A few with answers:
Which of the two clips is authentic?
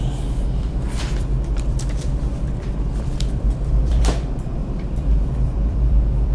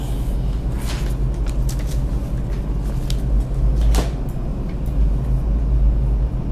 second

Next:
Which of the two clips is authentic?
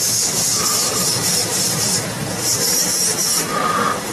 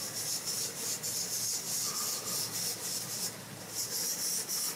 second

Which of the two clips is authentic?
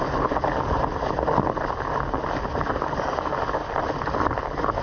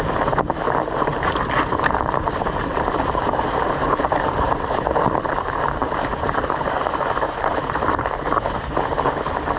first